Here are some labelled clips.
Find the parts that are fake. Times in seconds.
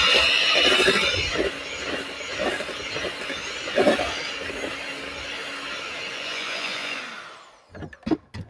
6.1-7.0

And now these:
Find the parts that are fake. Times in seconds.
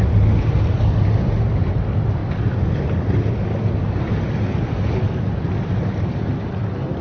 2.2-4.2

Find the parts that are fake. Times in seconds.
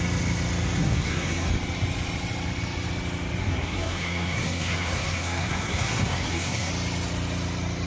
0.8-1.5; 3.4-6.7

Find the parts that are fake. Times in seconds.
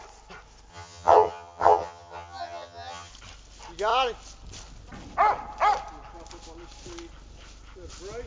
0.7-3.1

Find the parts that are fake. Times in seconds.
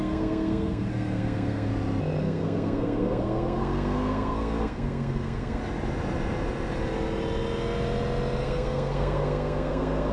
0.0-1.7; 2.2-5.6; 8.4-10.1